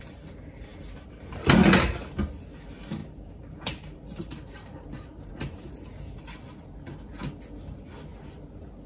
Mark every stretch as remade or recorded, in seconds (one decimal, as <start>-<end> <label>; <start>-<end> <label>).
0.0-3.0 recorded; 3.0-5.3 remade; 5.3-8.9 recorded